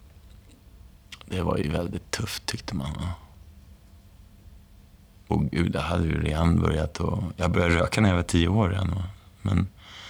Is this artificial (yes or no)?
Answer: no